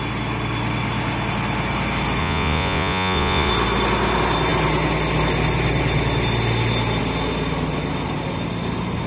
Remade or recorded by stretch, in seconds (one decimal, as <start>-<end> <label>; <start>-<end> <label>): 0.0-2.2 recorded; 2.2-3.5 remade; 3.5-9.1 recorded